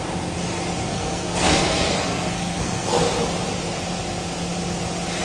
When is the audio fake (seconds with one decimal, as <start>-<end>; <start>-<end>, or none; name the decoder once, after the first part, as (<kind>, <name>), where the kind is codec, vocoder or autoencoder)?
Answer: 0.8-3.0 (codec, SNAC)